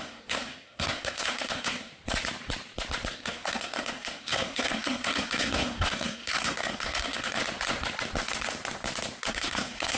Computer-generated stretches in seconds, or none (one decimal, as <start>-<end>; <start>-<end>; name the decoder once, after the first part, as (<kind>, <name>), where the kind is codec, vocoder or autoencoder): 0.0-1.9 (codec, SNAC); 3.1-7.4; 9.3-10.0